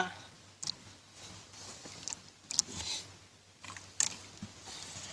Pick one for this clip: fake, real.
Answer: real